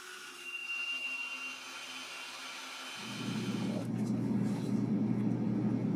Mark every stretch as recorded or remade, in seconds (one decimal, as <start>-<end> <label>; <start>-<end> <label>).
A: 0.0-0.6 recorded; 0.6-1.2 remade; 1.2-6.0 recorded